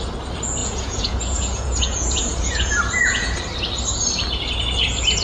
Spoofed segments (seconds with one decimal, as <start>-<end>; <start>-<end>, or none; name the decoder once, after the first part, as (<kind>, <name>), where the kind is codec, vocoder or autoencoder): 0.6-3.4 (vocoder, Vocos)

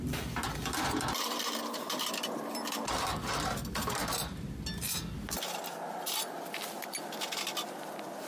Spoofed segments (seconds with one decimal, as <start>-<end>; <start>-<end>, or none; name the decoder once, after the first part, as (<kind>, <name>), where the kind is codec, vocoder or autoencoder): none

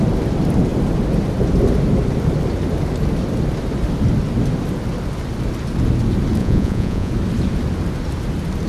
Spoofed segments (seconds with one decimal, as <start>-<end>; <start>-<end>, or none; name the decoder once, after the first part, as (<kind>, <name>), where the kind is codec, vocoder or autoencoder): 6.4-7.1 (vocoder, Vocos)

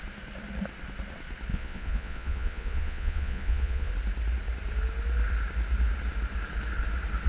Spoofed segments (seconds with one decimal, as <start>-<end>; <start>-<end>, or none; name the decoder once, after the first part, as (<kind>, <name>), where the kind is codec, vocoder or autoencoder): 1.5-3.9 (vocoder, Vocos)

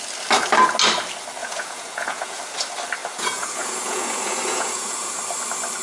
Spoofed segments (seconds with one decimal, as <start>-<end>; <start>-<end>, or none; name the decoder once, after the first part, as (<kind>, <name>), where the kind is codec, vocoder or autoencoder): 1.4-2.4 (vocoder, Vocos); 3.0-5.2

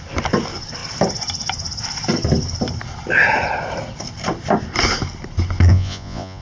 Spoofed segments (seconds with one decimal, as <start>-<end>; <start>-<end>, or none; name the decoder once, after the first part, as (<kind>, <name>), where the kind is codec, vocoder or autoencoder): 5.7-6.4 (vocoder, Vocos)

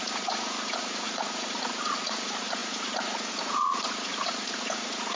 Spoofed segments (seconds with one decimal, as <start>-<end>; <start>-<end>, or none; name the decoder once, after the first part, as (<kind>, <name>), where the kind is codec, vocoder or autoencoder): 0.0-5.2 (vocoder, Vocos)